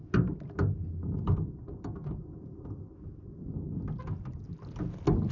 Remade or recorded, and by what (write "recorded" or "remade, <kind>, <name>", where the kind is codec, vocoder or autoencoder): recorded